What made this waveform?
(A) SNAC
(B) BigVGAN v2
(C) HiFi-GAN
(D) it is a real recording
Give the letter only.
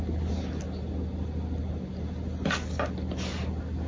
D